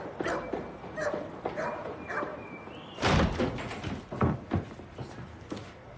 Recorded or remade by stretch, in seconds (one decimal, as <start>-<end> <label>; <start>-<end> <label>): 0.0-6.0 recorded